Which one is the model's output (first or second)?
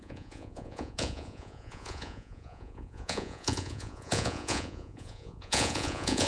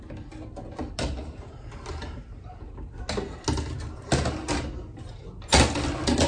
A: first